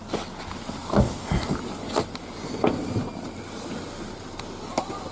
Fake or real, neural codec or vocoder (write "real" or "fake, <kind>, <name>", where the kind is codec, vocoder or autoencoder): real